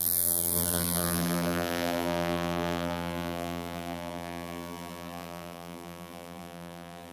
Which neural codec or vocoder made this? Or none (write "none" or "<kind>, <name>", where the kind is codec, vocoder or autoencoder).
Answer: vocoder, BigVGAN v2